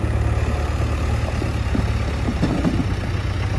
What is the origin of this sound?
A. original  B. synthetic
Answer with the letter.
A